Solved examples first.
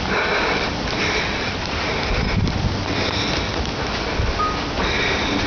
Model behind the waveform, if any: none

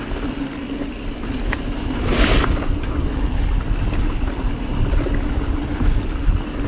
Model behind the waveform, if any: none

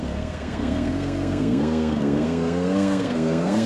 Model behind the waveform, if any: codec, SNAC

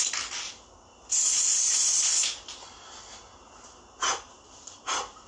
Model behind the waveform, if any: none